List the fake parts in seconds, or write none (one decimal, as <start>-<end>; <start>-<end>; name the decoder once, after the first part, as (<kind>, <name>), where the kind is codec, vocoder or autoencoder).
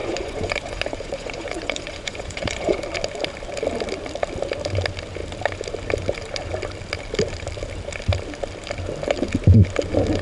0.0-2.8 (vocoder, Vocos)